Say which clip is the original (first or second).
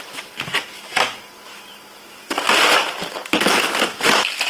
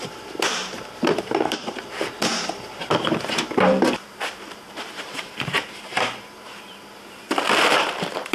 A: first